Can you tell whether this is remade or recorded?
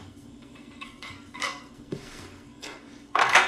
remade